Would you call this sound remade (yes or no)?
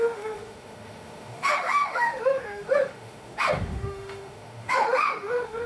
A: yes